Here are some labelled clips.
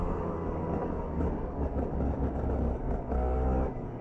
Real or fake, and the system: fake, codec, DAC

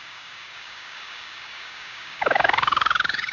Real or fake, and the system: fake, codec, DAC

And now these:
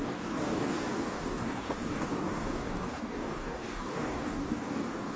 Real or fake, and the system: fake, codec, DAC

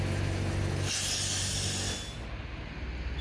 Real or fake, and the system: real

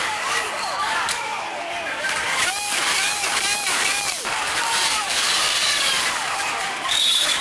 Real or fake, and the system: fake, codec, DAC